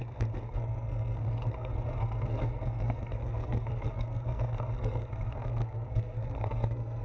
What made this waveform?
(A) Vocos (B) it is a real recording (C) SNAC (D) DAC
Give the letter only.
C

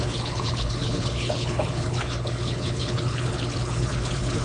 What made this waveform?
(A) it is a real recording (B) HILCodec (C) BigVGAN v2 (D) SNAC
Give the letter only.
B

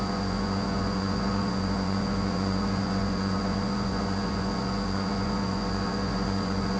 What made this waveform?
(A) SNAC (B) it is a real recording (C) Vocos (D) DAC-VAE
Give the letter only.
C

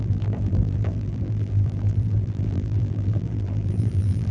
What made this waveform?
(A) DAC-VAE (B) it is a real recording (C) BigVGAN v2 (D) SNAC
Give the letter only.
C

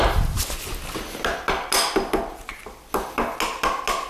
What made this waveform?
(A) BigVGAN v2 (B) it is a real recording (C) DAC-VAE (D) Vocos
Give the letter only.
B